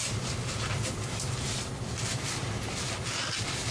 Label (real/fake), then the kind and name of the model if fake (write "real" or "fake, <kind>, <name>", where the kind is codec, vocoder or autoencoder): fake, vocoder, BigVGAN v2